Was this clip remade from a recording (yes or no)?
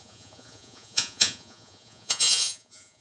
yes